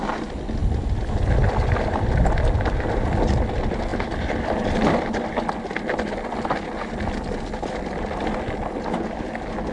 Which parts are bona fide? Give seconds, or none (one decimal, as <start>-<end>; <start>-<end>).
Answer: 0.0-9.7